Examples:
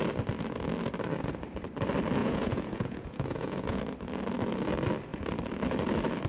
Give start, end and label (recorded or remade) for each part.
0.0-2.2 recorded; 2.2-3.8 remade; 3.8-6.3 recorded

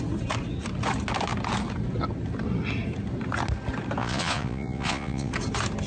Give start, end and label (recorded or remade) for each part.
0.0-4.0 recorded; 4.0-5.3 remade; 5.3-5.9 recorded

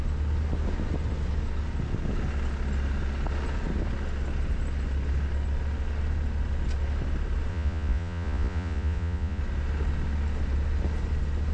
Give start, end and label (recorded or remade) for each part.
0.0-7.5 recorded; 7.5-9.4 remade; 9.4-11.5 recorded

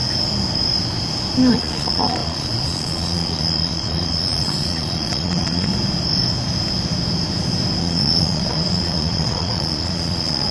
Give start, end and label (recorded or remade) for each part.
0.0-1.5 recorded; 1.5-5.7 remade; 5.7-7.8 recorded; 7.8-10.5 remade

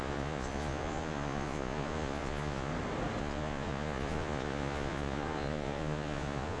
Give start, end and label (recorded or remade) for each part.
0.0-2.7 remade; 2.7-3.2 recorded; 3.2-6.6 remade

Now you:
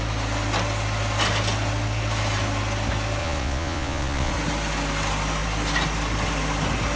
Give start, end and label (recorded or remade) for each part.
0.0-3.2 recorded; 3.2-4.3 remade; 4.3-7.0 recorded

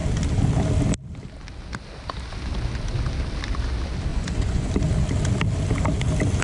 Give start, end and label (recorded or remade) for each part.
0.0-4.1 recorded; 4.1-4.7 remade; 4.7-6.4 recorded